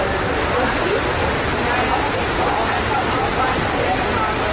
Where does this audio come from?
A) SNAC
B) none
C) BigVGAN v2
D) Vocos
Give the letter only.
B